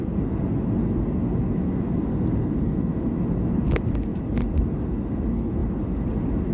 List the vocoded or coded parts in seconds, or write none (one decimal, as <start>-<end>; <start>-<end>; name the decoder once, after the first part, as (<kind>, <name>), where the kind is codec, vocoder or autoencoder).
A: 4.1-4.7 (vocoder, BigVGAN v2)